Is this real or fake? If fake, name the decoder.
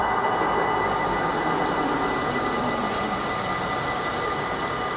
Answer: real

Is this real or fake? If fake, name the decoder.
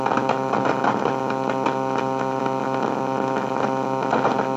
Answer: real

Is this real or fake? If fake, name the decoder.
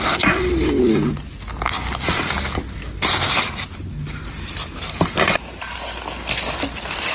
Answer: real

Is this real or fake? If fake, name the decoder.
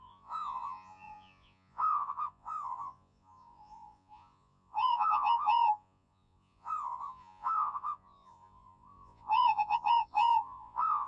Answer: fake, vocoder, Vocos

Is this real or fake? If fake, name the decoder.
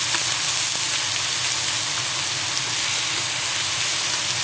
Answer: real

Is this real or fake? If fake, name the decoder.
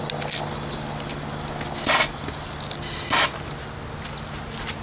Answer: real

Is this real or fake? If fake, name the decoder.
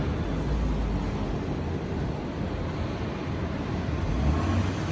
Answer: real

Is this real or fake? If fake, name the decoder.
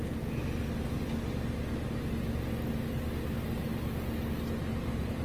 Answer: real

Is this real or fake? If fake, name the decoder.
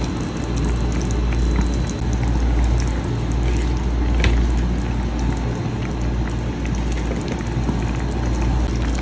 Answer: real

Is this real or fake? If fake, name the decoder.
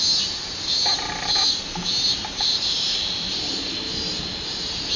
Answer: fake, vocoder, BigVGAN v2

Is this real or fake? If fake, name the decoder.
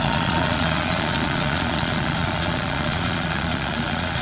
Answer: fake, vocoder, Vocos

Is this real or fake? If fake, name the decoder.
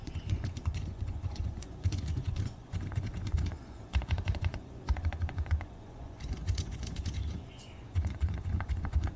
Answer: fake, vocoder, Vocos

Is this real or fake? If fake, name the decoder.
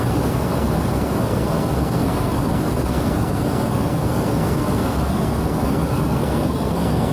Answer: fake, codec, SNAC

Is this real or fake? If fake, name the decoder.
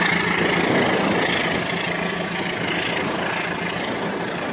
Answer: real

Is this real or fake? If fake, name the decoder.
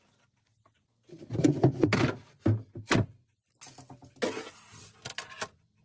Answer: real